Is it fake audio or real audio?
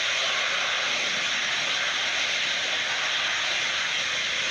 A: real